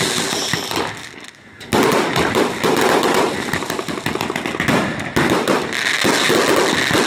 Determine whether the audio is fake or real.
real